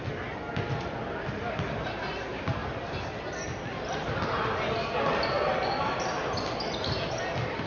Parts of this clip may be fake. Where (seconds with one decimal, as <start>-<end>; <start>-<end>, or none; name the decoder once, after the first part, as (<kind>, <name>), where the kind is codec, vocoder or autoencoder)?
none